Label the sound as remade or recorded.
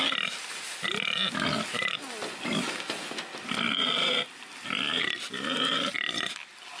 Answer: recorded